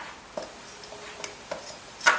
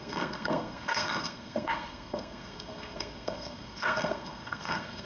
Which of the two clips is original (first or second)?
first